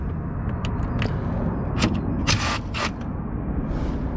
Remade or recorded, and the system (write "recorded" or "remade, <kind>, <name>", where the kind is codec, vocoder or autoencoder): recorded